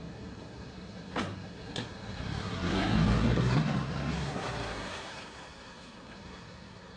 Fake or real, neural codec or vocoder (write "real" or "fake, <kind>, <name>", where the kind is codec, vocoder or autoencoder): fake, codec, SNAC